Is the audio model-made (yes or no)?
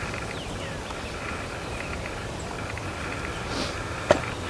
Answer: no